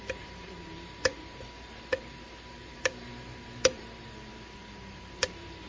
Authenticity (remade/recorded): remade